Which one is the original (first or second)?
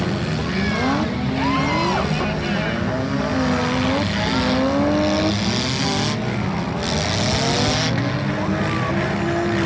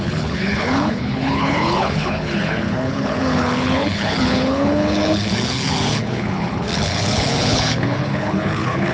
first